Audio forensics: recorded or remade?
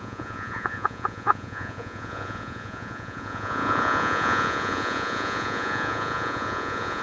remade